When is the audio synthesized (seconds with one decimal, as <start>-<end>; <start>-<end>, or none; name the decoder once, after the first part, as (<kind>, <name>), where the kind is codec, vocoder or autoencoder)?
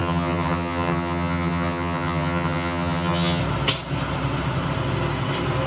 0.0-3.4 (vocoder, HiFi-GAN)